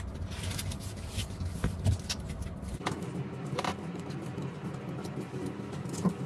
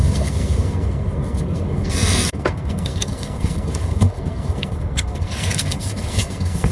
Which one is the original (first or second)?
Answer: first